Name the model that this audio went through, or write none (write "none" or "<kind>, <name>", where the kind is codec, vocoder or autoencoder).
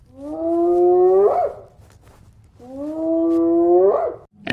none